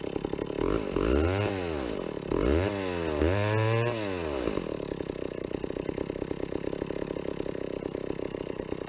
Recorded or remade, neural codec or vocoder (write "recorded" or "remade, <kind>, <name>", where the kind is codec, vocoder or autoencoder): recorded